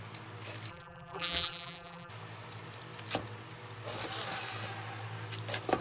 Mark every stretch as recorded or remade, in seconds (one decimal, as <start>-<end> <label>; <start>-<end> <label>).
0.0-0.7 recorded; 0.7-2.1 remade; 2.1-5.8 recorded

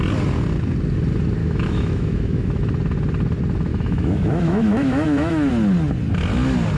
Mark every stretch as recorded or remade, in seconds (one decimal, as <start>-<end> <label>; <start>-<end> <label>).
0.0-1.4 recorded; 1.4-2.6 remade; 2.6-3.7 recorded; 3.7-5.5 remade; 5.5-6.8 recorded

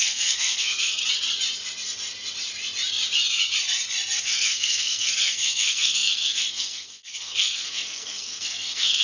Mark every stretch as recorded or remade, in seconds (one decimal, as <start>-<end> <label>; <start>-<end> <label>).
0.0-1.0 remade; 1.0-4.2 recorded; 4.2-9.0 remade